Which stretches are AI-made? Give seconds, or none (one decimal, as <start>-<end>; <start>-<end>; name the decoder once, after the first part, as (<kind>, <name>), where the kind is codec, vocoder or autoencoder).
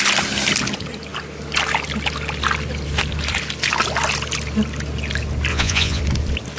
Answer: 5.5-6.0 (vocoder, Vocos)